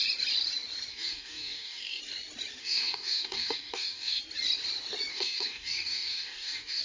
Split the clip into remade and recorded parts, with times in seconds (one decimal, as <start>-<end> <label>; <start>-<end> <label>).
0.0-0.9 recorded; 0.9-2.0 remade; 2.0-2.6 recorded; 2.6-4.2 remade; 4.2-5.1 recorded; 5.1-6.8 remade

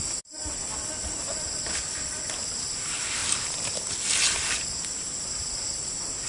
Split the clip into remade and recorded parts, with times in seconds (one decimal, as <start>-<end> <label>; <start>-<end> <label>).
0.0-6.3 recorded

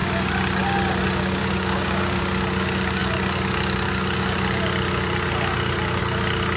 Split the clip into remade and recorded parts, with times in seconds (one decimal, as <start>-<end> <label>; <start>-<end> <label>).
0.0-1.4 recorded; 1.4-2.2 remade; 2.2-6.6 recorded

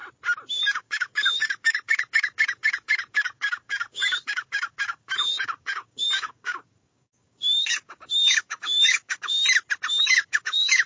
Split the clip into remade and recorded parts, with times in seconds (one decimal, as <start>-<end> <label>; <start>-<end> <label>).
0.0-0.6 recorded; 0.6-9.3 remade; 9.3-10.0 recorded; 10.0-10.9 remade

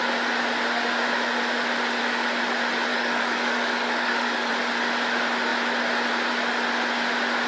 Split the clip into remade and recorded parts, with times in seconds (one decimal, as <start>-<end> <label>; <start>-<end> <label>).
0.0-2.9 recorded; 2.9-4.5 remade; 4.5-7.5 recorded

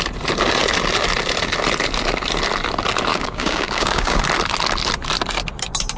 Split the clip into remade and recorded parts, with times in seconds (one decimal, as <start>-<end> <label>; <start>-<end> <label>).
0.0-3.1 recorded; 3.1-4.2 remade; 4.2-6.0 recorded